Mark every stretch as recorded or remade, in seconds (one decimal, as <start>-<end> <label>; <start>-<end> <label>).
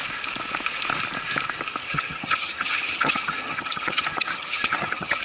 0.0-1.8 recorded; 1.8-5.2 remade